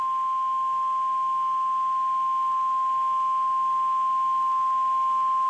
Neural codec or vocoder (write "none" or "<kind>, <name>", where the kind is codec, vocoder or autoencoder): none